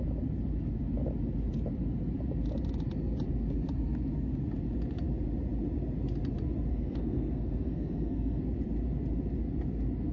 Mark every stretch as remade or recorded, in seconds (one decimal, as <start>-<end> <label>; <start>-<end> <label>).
0.0-6.7 recorded; 6.7-8.4 remade; 8.4-10.1 recorded